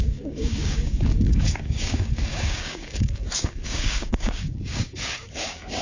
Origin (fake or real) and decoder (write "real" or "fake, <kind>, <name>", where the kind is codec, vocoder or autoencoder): fake, codec, DAC